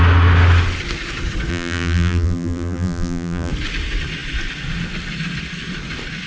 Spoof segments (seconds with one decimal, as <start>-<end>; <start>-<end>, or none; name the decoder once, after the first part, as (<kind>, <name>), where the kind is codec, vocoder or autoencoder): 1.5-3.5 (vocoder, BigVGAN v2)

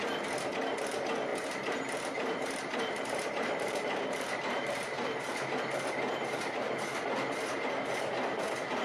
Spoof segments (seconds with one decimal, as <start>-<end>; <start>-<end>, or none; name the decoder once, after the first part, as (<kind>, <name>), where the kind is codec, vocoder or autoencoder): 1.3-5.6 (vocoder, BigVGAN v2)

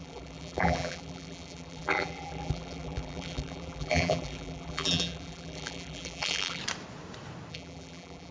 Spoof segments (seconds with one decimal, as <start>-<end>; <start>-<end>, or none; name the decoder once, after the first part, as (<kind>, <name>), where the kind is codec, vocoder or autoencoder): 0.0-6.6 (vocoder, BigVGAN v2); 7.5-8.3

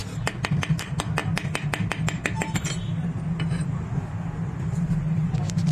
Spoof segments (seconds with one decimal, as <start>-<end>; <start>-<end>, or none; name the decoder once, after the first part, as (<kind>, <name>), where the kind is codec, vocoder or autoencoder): 0.0-1.2 (vocoder, BigVGAN v2); 4.6-5.7

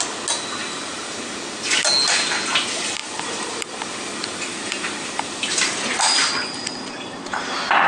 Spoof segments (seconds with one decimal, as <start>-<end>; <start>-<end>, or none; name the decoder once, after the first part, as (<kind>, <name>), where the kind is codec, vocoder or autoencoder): 0.6-1.2 (vocoder, BigVGAN v2); 3.0-7.9